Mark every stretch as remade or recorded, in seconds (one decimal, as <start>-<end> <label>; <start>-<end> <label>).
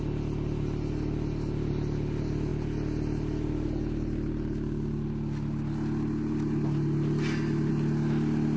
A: 0.0-8.6 recorded